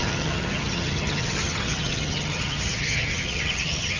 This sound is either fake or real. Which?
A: fake